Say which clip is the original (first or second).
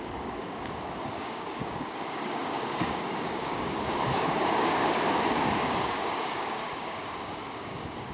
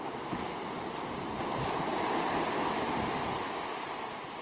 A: second